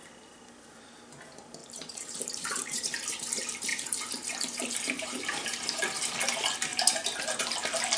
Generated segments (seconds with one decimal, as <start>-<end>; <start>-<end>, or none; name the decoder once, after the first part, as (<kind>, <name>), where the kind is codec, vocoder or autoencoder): 1.6-2.9 (vocoder, BigVGAN v2); 3.7-5.8